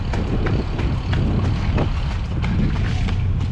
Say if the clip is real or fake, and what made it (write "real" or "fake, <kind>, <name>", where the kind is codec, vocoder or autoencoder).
real